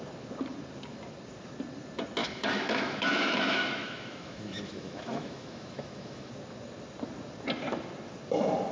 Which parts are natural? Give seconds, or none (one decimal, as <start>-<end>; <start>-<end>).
0.0-2.2; 6.3-8.7